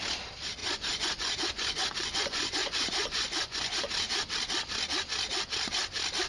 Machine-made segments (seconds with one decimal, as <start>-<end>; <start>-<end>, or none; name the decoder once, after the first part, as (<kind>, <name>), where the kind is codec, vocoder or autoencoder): 0.6-3.8 (vocoder, Vocos)